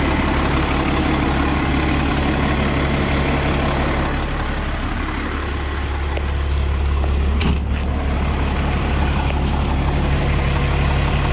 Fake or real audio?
real